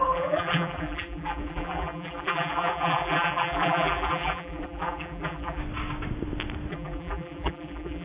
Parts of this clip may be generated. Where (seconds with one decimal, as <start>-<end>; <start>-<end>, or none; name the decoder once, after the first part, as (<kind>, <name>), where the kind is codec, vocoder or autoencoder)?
0.0-5.6 (vocoder, BigVGAN v2); 6.7-8.0